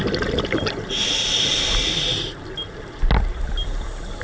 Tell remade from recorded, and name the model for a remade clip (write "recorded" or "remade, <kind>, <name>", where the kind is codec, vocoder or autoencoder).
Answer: recorded